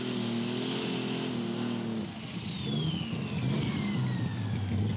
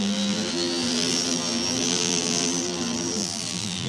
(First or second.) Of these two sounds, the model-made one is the second